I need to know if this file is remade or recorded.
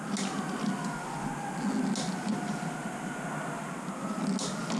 recorded